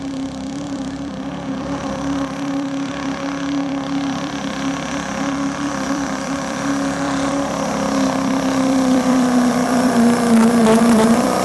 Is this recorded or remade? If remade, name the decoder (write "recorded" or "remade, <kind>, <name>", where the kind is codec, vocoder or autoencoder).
remade, vocoder, BigVGAN v2